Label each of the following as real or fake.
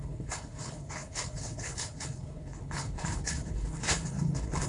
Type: fake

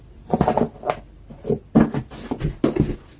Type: real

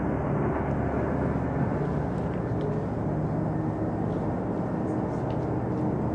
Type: real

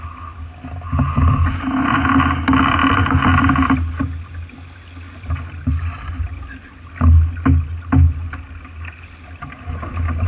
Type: real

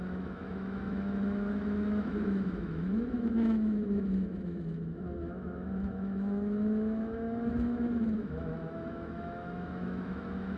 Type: fake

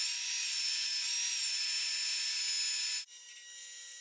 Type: real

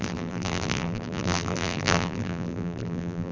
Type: fake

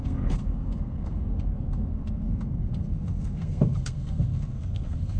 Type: fake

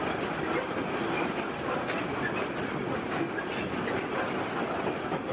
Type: real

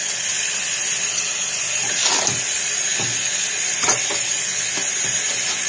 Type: real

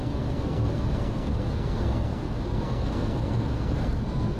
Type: fake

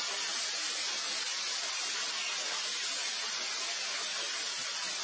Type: real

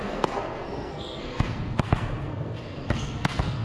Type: fake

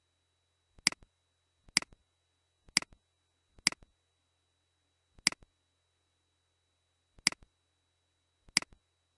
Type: real